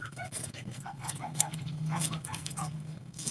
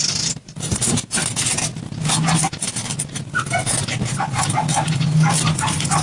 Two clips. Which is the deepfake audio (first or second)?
first